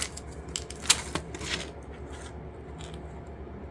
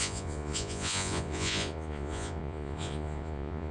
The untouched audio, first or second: first